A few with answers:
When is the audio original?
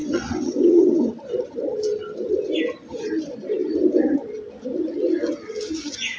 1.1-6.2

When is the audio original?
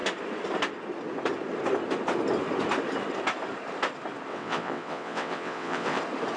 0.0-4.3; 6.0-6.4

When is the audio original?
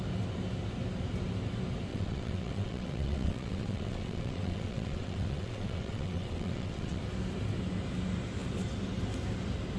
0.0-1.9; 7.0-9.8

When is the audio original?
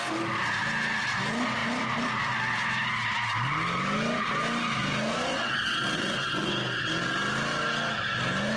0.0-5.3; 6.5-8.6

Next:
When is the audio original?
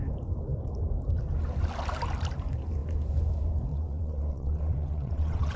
0.0-3.7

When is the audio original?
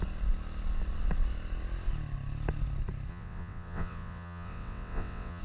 0.0-3.1